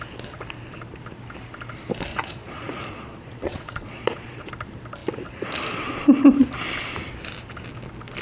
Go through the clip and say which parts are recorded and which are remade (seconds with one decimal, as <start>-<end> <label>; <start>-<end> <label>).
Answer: 0.0-2.1 recorded; 2.1-4.5 remade; 4.5-8.2 recorded